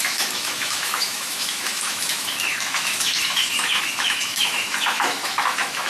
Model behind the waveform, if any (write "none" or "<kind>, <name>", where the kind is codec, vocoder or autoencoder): autoencoder, DAC-VAE